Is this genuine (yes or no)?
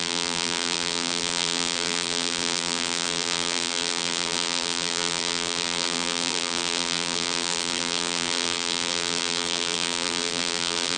no